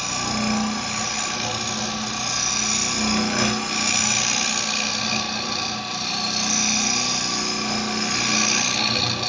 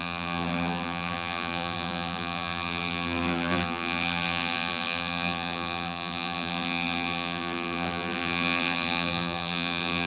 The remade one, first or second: second